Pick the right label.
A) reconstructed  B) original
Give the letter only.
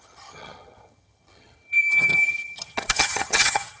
A